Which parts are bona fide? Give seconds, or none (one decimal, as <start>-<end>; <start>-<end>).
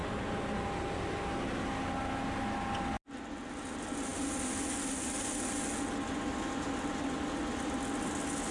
0.0-8.5